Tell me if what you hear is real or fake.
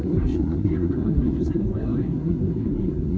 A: fake